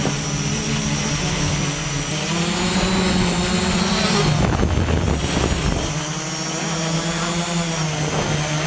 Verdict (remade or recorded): recorded